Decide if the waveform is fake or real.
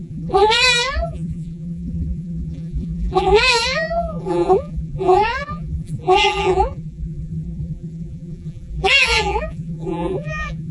fake